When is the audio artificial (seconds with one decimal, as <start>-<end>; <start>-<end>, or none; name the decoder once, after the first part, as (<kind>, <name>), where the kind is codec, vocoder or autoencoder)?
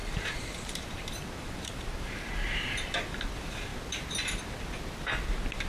0.0-2.9 (vocoder, BigVGAN v2)